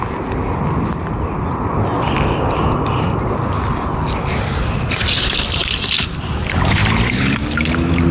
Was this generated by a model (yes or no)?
no